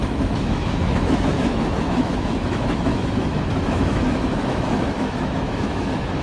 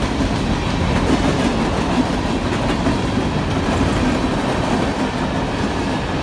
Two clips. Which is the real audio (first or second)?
second